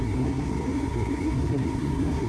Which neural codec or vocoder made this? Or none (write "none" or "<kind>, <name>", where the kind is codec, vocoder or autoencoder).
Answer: codec, SNAC